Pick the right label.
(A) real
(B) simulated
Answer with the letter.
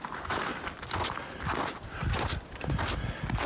A